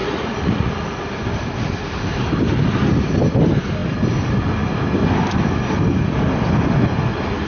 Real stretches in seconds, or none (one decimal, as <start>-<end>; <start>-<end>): 0.7-7.5